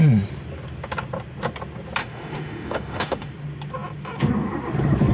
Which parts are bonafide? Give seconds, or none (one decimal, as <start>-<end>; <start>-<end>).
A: 0.0-2.0; 3.3-5.1